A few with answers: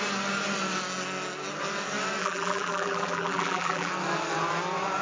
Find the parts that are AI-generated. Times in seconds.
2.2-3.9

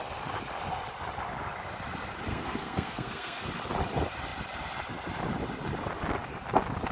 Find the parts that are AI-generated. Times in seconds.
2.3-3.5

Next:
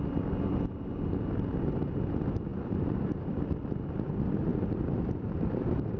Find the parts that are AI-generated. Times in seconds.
2.5-3.4; 4.5-6.0